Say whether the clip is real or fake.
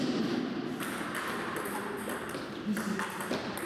real